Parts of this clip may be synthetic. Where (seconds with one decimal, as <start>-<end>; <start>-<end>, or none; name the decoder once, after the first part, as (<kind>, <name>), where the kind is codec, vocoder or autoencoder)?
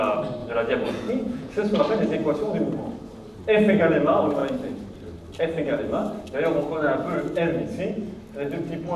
0.4-1.8 (vocoder, Vocos)